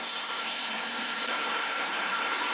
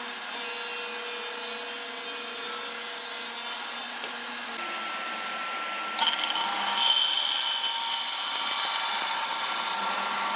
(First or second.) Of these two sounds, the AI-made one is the first